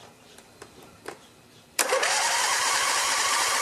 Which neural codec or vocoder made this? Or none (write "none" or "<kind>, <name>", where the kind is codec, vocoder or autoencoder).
vocoder, BigVGAN v2